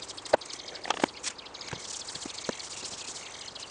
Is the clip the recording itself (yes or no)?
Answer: yes